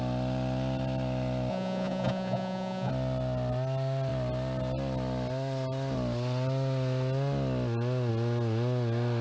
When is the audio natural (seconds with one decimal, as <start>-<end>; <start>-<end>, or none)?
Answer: 0.0-1.5; 2.9-9.2